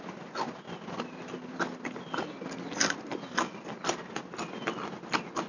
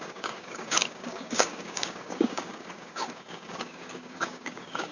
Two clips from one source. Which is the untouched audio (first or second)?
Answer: first